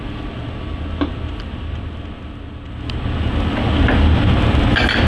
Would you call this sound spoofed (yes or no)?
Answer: no